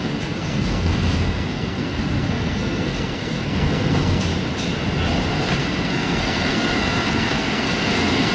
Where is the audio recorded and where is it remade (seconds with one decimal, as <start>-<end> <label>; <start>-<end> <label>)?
0.0-4.3 remade; 4.3-5.6 recorded; 5.6-8.3 remade